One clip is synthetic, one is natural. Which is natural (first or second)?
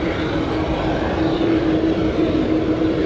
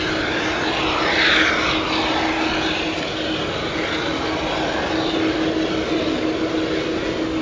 second